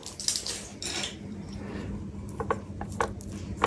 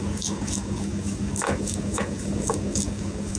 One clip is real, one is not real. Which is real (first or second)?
first